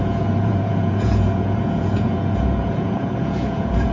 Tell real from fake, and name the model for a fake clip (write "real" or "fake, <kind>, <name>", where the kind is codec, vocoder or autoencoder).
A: fake, vocoder, Vocos